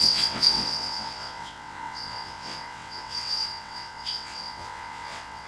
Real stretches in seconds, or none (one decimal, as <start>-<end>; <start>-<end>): none